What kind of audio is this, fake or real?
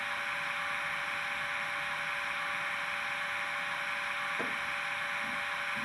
real